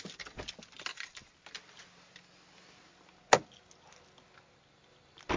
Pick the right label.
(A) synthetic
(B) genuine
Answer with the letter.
B